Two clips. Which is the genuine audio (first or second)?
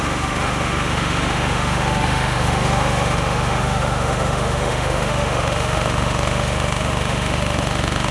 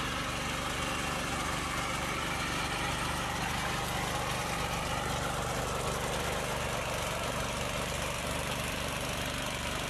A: second